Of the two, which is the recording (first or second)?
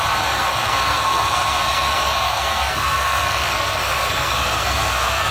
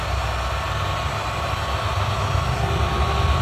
second